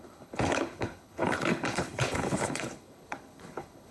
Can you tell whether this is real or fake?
fake